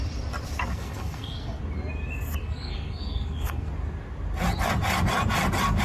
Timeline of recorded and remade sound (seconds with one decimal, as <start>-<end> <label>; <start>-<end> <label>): 0.0-0.7 recorded; 0.7-1.6 remade; 1.6-2.4 recorded; 2.4-3.7 remade; 3.7-5.8 recorded